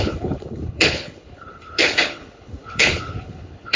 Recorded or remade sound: remade